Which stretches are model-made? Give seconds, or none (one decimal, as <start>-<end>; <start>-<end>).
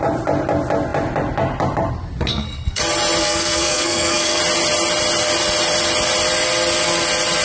2.3-2.8; 3.2-4.4